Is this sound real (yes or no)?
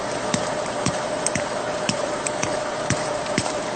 no